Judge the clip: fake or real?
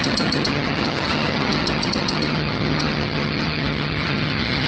fake